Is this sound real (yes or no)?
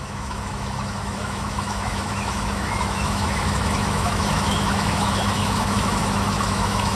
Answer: no